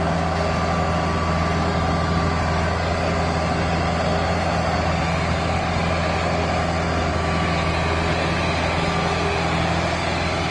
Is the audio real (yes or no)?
yes